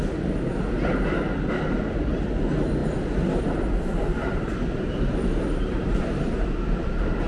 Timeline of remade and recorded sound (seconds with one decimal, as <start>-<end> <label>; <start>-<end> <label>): 0.0-4.2 recorded; 4.2-6.0 remade; 6.0-7.3 recorded